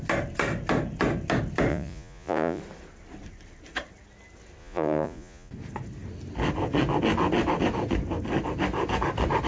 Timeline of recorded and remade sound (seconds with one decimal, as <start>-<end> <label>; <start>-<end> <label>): 0.0-1.7 recorded; 1.7-2.6 remade; 2.6-4.6 recorded; 4.6-5.5 remade; 5.5-9.5 recorded

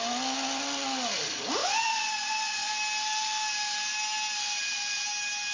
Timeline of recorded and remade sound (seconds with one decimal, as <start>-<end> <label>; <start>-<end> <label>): 0.0-1.6 recorded; 1.6-2.7 remade; 2.7-5.5 recorded

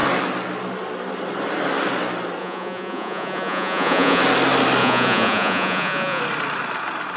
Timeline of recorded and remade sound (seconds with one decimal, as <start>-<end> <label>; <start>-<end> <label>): 0.0-2.4 recorded; 2.4-4.2 remade; 4.2-4.8 recorded; 4.8-6.2 remade; 6.2-7.2 recorded

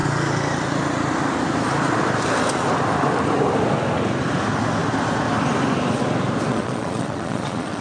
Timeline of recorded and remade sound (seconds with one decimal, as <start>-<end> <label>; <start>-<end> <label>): 0.0-6.5 recorded; 6.5-7.8 remade

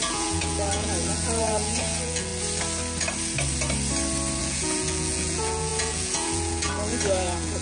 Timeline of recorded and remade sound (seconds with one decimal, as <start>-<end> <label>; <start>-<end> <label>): 0.0-2.3 remade; 2.3-4.4 recorded; 4.4-7.6 remade

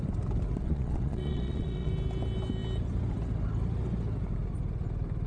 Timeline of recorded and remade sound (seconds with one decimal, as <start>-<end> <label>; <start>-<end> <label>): 0.0-0.6 recorded; 0.6-1.9 remade; 1.9-5.3 recorded